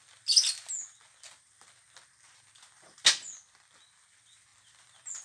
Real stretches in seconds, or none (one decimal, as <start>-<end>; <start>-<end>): 0.0-5.2